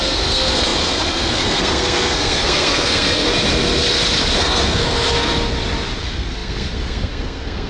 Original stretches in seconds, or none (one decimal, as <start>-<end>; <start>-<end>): 3.3-4.4; 5.3-6.0